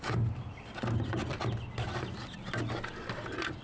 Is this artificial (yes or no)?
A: no